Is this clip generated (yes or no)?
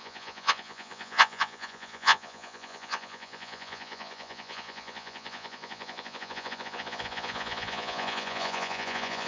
yes